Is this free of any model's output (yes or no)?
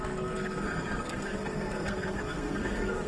no